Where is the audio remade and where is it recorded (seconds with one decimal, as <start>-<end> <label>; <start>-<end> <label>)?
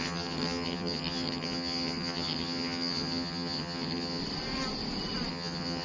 0.0-4.2 remade; 4.2-5.3 recorded; 5.3-5.8 remade